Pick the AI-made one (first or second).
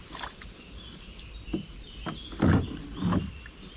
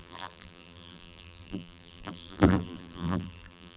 second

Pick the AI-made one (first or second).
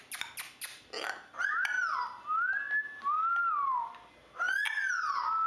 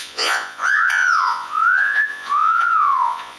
second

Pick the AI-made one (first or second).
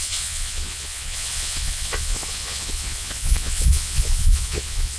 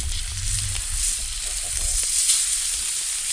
first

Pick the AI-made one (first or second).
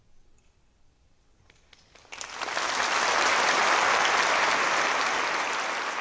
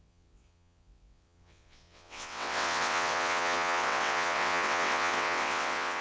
second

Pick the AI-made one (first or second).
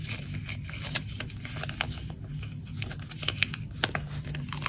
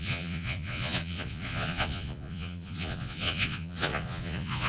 second